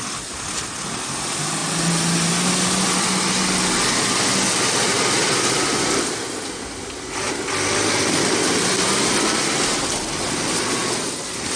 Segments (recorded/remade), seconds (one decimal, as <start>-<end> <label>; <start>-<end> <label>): 0.0-11.6 recorded